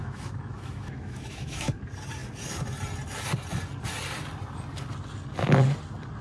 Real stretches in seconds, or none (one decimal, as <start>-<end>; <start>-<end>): 1.8-6.2